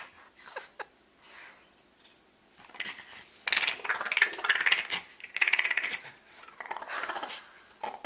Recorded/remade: recorded